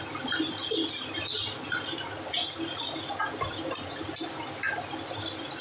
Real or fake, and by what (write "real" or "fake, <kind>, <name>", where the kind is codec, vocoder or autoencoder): real